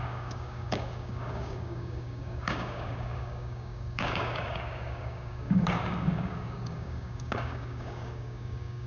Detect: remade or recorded remade